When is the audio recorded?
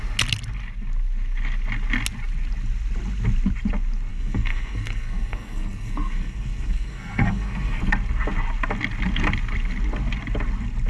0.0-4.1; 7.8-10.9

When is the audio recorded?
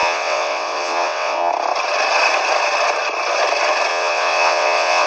1.5-3.9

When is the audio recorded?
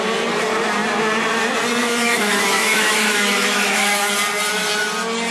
0.0-1.8; 4.1-5.3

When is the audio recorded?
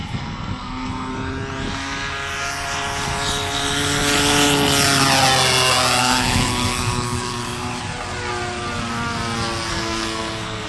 1.1-6.0; 7.4-9.7